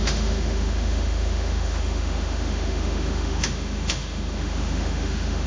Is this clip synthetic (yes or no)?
yes